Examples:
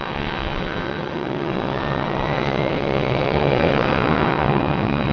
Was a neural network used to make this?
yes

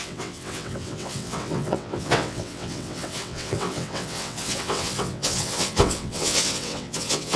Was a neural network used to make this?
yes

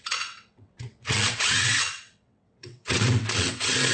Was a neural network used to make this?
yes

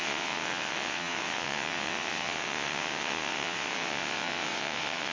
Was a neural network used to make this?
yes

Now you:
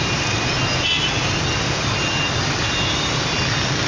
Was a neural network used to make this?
no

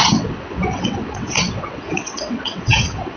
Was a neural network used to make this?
yes